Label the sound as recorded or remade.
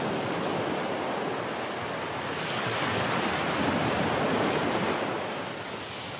recorded